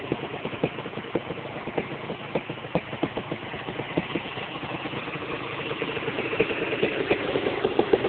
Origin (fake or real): real